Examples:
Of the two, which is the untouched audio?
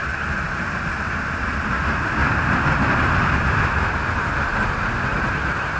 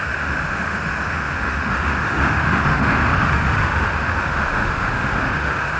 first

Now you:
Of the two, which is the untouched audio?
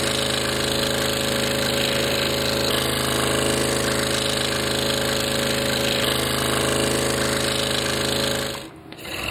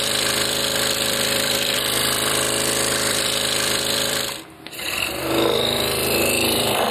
first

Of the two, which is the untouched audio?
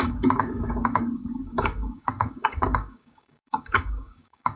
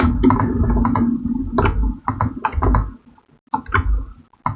second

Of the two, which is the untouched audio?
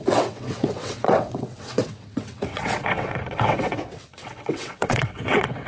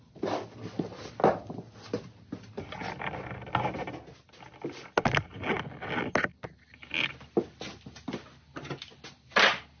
second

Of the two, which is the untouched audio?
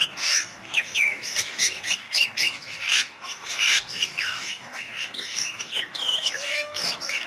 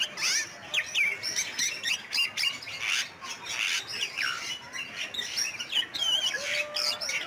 second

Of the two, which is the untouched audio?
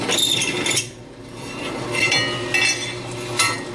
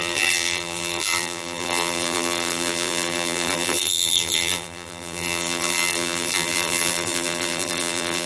first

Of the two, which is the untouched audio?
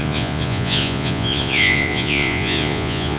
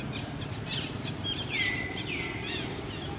second